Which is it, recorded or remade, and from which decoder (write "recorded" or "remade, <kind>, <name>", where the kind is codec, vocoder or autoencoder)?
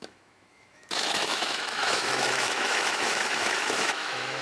remade, autoencoder, DAC-VAE